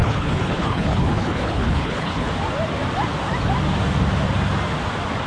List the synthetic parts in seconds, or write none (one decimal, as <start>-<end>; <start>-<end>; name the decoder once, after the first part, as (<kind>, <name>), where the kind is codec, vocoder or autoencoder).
0.0-2.3 (codec, HILCodec)